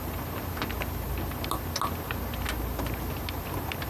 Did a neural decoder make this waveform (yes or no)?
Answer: no